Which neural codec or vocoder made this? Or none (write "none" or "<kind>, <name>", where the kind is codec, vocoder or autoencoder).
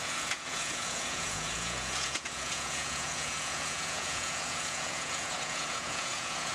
vocoder, Vocos